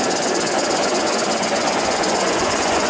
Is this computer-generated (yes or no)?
yes